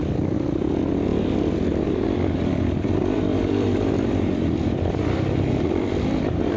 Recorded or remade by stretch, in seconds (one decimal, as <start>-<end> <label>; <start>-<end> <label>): 0.0-6.6 remade